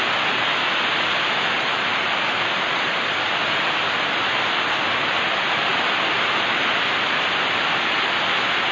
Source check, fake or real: real